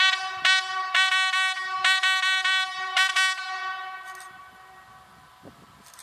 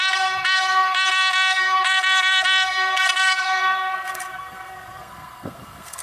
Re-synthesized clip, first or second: second